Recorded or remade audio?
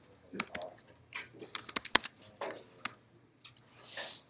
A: recorded